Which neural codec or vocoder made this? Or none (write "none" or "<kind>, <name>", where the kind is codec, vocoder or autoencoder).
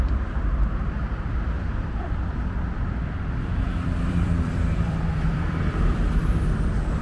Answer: vocoder, BigVGAN v2